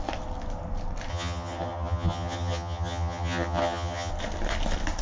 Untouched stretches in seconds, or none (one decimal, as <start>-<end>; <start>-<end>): 0.0-1.1; 4.1-5.0